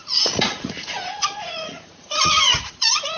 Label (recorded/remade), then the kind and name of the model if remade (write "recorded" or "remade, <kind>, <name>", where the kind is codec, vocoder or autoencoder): remade, vocoder, Vocos